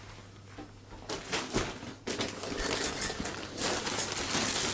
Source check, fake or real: real